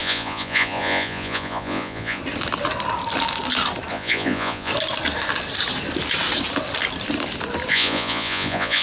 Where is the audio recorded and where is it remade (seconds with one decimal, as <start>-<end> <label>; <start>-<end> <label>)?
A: 0.0-2.2 remade; 2.2-3.9 recorded; 3.9-4.7 remade; 4.7-7.7 recorded; 7.7-8.8 remade